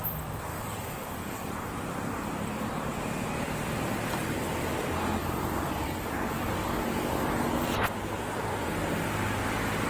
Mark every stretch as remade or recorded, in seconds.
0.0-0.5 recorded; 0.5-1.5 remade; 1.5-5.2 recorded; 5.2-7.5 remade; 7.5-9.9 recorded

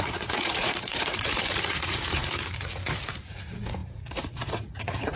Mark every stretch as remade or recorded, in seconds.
0.0-5.2 remade

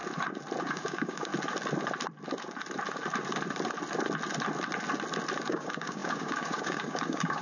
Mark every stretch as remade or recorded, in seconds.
0.0-0.6 recorded; 0.6-1.3 remade; 1.3-5.5 recorded; 5.5-7.4 remade

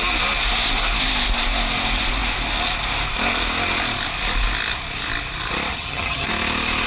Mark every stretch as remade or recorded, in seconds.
0.0-5.7 recorded; 5.7-6.3 remade; 6.3-6.9 recorded

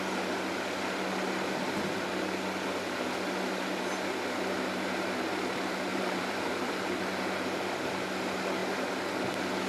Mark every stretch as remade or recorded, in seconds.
0.0-5.9 recorded; 5.9-6.7 remade; 6.7-9.7 recorded